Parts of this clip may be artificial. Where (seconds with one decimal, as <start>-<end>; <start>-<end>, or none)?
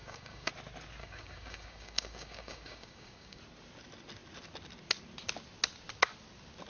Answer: 0.0-0.5; 1.0-3.4